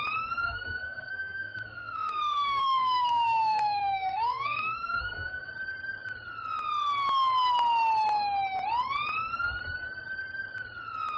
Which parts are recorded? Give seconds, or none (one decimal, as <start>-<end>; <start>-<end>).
0.0-0.4; 5.5-11.2

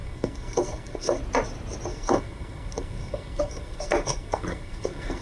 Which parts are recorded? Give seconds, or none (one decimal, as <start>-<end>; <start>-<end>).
1.2-1.9

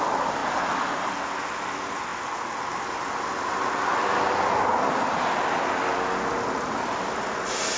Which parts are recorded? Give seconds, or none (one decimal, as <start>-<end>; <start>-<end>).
0.0-7.8

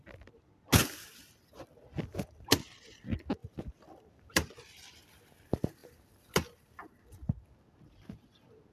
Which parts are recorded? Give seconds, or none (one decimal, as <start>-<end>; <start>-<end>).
0.0-3.4; 5.2-5.8; 7.1-8.7

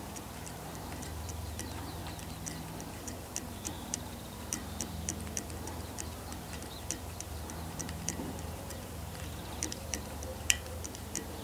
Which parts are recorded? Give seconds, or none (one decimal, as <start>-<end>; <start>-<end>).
2.0-2.9

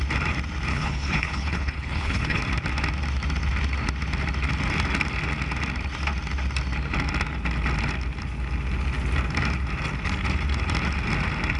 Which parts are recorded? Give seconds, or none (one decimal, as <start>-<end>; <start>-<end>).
0.0-0.7; 2.4-11.6

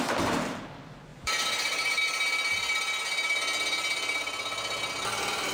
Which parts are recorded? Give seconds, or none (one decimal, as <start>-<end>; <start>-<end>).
0.0-1.1; 2.0-5.5

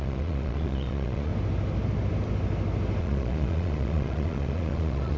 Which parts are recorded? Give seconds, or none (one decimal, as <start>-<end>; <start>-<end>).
1.3-3.0